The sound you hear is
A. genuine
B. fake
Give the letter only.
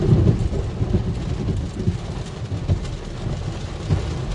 A